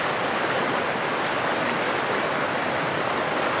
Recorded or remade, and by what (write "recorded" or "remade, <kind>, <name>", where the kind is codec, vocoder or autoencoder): recorded